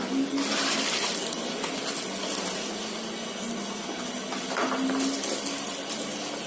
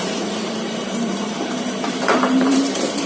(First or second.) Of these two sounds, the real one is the first